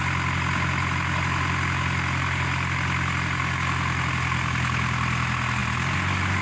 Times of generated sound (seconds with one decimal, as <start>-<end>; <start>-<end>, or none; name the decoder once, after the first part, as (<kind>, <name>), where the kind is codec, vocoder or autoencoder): none